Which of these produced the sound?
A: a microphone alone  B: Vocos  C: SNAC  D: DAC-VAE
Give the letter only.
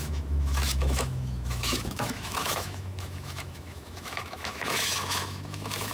D